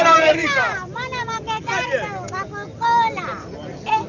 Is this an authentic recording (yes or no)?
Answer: yes